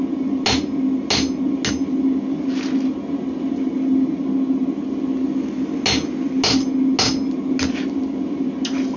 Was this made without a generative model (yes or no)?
yes